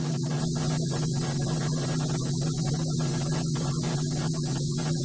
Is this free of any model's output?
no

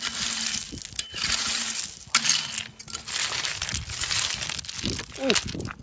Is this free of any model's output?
yes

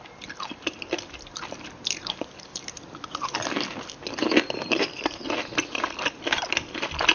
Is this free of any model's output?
yes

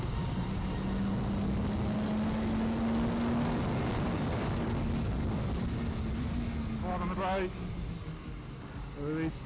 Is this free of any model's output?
yes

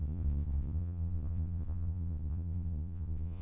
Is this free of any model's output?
no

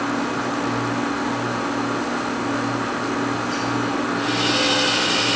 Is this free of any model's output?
yes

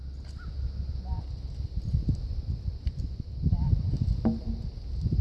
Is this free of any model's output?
yes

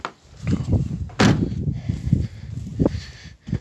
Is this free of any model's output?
yes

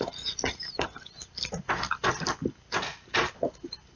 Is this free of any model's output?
yes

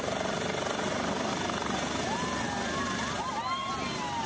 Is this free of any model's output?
yes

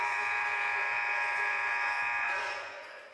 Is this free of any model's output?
no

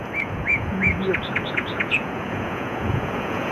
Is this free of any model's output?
no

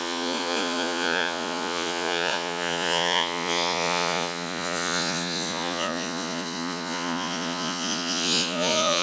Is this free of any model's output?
no